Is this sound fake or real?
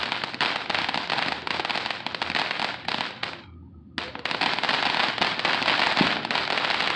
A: real